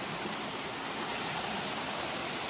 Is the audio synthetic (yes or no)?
no